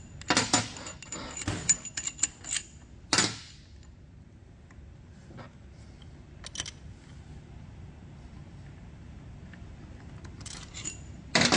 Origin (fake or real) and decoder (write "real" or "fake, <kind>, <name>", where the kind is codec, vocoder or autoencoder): real